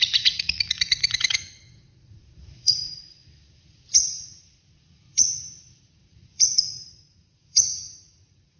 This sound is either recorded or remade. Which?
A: remade